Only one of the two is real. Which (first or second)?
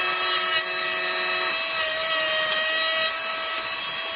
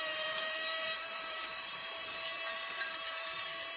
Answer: first